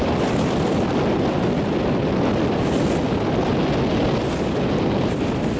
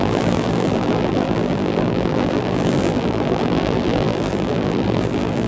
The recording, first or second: first